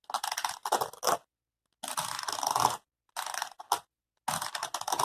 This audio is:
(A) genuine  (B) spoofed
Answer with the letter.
A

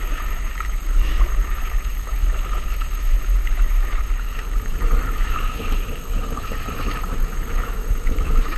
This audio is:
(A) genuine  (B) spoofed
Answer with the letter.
B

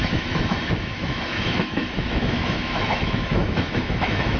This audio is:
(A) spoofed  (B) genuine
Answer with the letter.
A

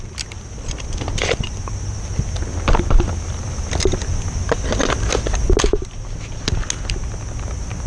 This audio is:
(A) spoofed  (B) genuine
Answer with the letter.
B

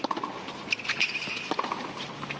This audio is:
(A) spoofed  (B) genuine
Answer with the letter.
B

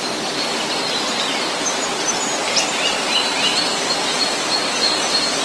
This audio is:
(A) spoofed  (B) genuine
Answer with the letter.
B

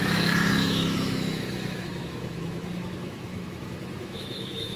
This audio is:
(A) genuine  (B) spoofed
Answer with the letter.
B